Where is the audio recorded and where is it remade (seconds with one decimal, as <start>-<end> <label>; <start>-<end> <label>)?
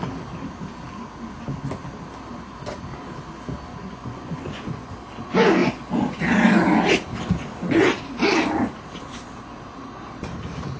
0.0-3.7 recorded; 3.7-4.9 remade; 4.9-5.6 recorded; 5.6-6.3 remade; 6.3-10.8 recorded